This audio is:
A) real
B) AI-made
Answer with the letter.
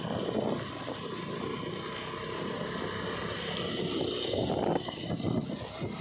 A